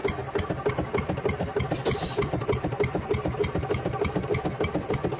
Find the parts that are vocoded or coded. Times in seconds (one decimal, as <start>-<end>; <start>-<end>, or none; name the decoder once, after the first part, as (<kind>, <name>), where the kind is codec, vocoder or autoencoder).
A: none